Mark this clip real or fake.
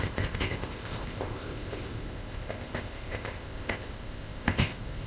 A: fake